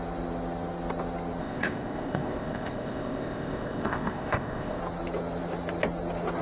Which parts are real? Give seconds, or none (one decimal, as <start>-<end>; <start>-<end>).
0.0-1.4; 4.8-6.4